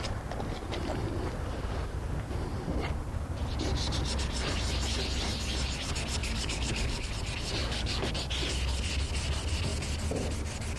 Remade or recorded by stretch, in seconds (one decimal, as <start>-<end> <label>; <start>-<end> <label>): 0.0-6.2 recorded; 6.2-7.1 remade; 7.1-7.6 recorded; 7.6-8.1 remade; 8.1-10.8 recorded